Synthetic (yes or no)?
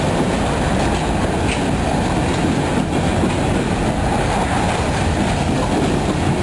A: no